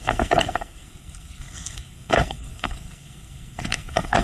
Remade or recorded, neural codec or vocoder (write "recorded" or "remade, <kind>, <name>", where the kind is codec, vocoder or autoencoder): remade, codec, SNAC